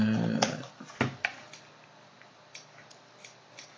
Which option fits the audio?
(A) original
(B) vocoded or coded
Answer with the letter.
A